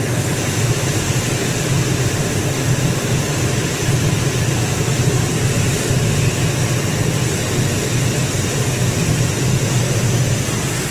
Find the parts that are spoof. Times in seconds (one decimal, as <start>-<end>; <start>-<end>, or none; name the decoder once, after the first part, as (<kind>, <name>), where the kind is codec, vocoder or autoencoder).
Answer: 3.6-5.3 (vocoder, BigVGAN v2)